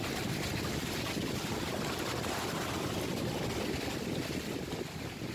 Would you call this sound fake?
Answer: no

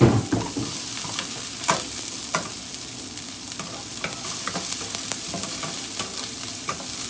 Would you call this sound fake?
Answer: no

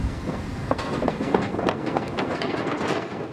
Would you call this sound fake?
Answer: yes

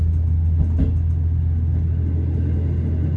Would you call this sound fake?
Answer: no